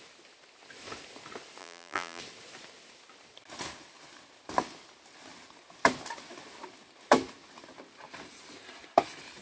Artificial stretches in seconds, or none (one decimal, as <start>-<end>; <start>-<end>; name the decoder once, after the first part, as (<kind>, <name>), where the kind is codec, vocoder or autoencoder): 1.6-2.2 (vocoder, BigVGAN v2)